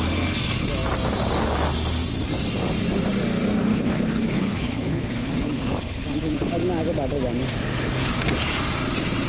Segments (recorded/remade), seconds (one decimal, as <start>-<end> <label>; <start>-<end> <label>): 0.0-3.7 recorded; 3.7-5.7 remade; 5.7-9.3 recorded